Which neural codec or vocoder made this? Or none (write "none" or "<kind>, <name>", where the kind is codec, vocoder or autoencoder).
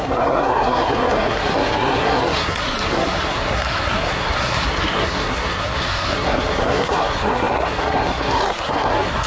codec, SNAC